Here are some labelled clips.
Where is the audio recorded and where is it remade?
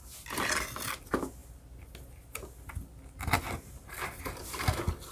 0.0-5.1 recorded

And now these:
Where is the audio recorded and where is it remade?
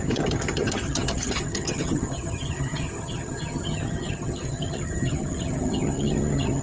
0.0-6.6 remade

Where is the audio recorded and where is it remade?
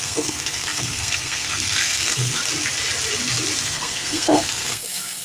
0.0-2.4 remade; 2.4-3.6 recorded; 3.6-5.2 remade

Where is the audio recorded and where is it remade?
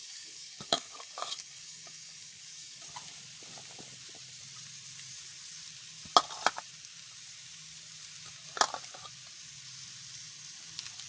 0.0-2.8 remade; 2.8-11.1 recorded